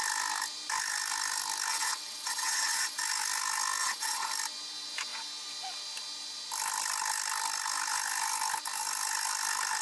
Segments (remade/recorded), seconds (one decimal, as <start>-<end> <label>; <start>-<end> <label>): 0.0-1.7 recorded; 1.7-3.0 remade; 3.0-3.8 recorded; 3.8-4.3 remade; 4.3-9.8 recorded